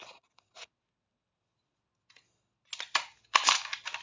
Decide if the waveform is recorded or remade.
recorded